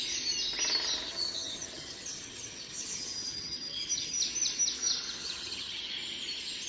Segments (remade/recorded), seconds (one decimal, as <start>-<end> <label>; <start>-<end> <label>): 0.0-1.1 recorded; 1.1-4.2 remade; 4.2-5.2 recorded; 5.2-5.8 remade; 5.8-6.7 recorded